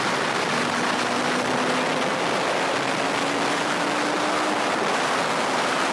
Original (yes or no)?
yes